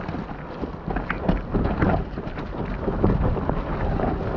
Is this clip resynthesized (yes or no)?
no